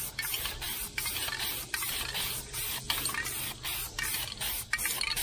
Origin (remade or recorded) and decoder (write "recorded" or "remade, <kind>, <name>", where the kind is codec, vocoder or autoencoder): recorded